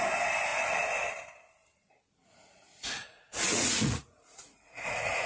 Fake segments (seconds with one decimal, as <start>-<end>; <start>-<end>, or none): 2.2-5.3